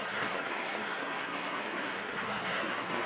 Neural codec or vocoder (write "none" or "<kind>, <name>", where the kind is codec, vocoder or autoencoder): codec, SNAC